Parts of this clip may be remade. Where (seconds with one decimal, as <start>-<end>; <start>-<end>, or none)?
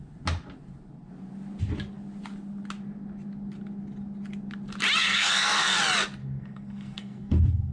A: 5.0-5.8; 6.2-7.7